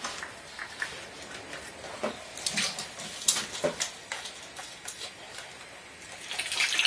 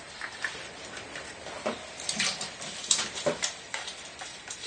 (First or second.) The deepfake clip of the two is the second